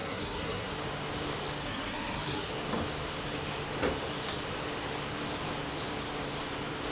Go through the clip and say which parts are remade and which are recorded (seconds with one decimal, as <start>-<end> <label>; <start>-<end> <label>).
0.0-0.7 remade; 0.7-1.6 recorded; 1.6-2.5 remade; 2.5-6.9 recorded